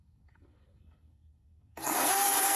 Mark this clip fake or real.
fake